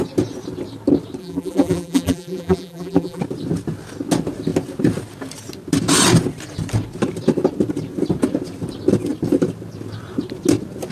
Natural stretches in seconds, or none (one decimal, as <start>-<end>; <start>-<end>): 0.0-1.2; 3.2-10.9

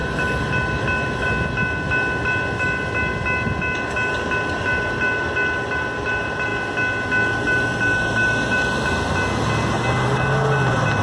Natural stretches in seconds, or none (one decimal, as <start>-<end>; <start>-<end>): 0.0-11.0